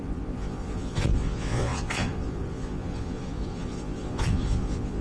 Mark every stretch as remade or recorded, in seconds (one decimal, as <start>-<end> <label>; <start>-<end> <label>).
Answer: 0.0-5.0 remade